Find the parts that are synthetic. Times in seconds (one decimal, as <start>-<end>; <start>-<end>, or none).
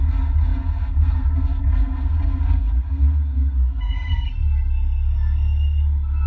0.0-6.3